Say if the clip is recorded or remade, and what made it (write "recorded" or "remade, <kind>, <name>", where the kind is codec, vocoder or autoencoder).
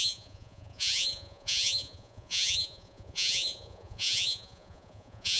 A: remade, vocoder, Vocos